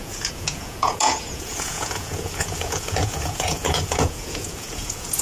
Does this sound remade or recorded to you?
remade